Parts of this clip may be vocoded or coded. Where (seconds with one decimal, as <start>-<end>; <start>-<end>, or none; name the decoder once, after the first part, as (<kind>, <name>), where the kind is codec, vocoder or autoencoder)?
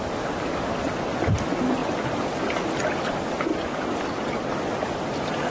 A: 3.5-4.5 (vocoder, BigVGAN v2)